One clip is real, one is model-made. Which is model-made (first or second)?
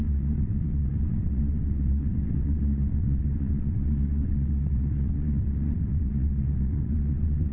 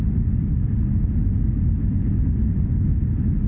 first